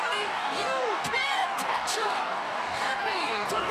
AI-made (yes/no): yes